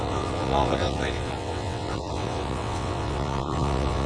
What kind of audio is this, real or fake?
fake